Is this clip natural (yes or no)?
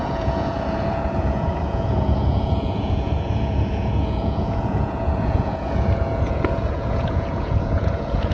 no